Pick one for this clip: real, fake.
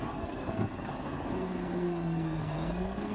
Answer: fake